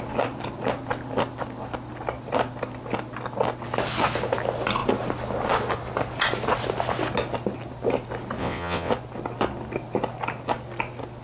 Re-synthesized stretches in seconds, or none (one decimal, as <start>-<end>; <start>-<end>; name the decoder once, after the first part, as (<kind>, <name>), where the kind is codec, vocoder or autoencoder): 8.4-8.9 (vocoder, WaveNeXt)